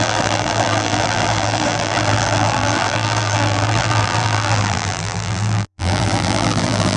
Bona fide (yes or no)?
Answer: no